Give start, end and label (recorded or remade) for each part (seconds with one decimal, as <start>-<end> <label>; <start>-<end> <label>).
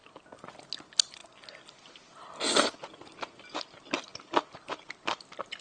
0.0-5.6 recorded